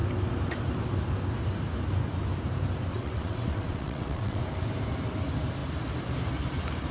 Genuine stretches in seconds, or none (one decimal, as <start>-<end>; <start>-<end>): 0.0-2.9; 4.4-6.9